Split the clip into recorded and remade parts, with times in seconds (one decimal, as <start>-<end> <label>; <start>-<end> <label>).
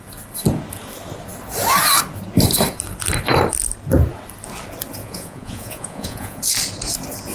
0.0-5.0 recorded; 5.0-6.4 remade; 6.4-7.3 recorded